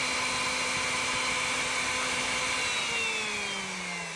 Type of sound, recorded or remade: recorded